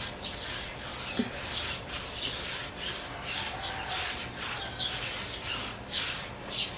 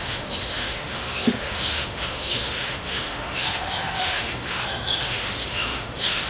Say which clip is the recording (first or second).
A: first